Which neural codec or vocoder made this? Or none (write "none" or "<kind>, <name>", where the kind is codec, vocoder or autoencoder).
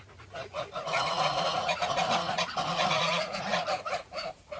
vocoder, Vocos